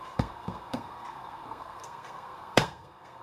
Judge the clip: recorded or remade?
remade